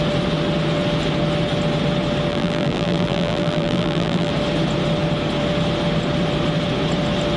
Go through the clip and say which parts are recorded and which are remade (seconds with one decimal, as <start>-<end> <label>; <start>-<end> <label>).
0.0-2.3 recorded; 2.3-4.3 remade; 4.3-7.4 recorded